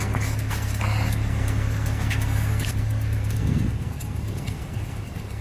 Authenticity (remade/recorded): remade